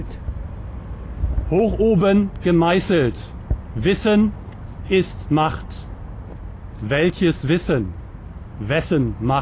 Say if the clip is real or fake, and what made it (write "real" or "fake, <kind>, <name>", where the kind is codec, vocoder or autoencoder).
real